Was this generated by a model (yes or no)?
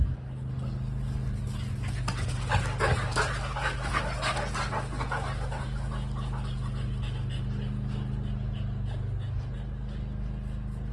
no